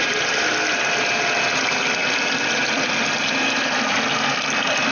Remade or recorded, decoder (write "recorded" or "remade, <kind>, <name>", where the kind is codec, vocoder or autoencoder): recorded